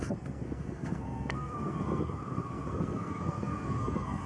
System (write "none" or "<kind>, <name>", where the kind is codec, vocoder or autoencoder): codec, SNAC